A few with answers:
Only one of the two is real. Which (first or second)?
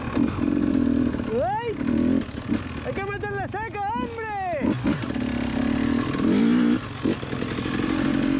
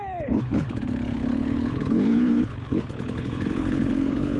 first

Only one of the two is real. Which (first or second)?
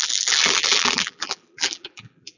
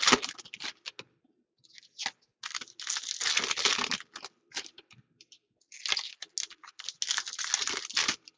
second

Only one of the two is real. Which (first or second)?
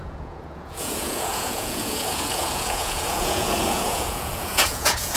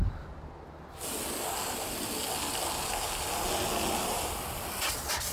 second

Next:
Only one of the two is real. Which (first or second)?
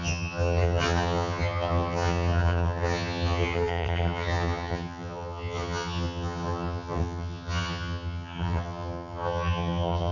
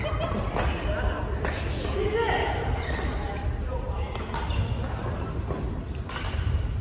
second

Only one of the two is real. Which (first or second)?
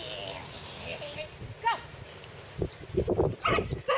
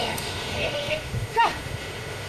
first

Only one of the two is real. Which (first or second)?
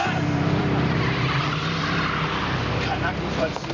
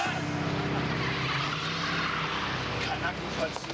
second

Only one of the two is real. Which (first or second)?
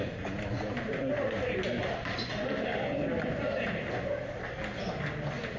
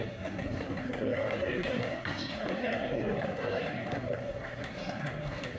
first